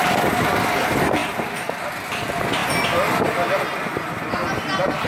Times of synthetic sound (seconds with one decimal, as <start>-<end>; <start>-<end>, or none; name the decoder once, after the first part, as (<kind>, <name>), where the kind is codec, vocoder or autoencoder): none